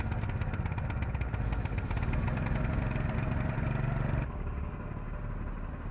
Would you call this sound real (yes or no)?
yes